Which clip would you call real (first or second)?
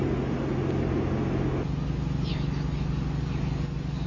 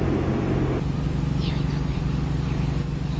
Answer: first